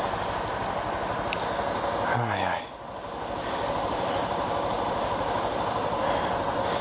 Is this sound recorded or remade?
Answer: recorded